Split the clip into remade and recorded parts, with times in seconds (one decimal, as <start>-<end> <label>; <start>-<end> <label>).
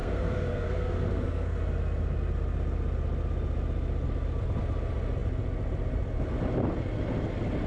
0.0-1.6 remade; 1.6-7.7 recorded